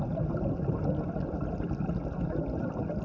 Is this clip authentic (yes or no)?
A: yes